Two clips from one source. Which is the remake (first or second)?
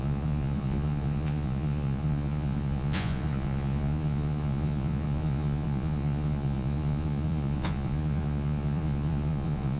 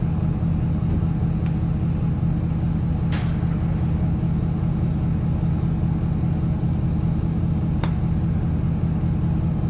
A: first